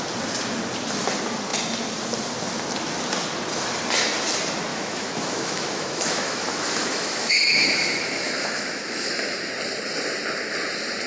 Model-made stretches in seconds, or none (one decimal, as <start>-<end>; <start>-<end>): 4.7-9.5